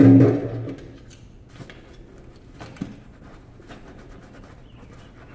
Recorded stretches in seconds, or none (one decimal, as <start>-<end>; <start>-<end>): 0.0-5.3